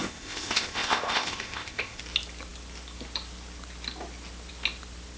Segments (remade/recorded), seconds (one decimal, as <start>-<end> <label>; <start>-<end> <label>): 0.0-2.0 remade; 2.0-5.2 recorded